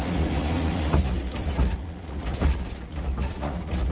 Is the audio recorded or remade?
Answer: remade